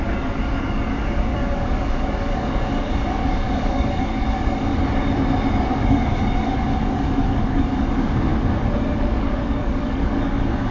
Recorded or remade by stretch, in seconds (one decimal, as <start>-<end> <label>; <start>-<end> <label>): 0.0-4.7 remade; 4.7-5.5 recorded; 5.5-8.3 remade; 8.3-9.0 recorded; 9.0-10.7 remade